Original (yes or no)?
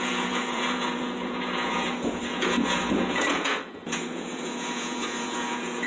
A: no